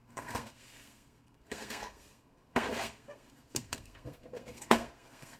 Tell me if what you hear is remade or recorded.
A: remade